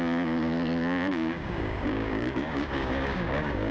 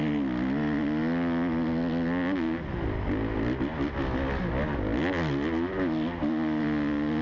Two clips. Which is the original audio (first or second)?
second